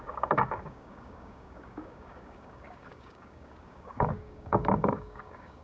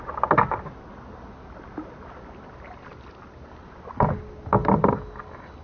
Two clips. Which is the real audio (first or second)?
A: second